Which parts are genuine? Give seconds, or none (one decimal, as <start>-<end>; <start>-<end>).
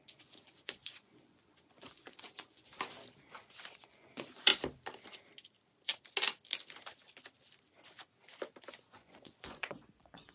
2.7-3.7; 4.5-8.7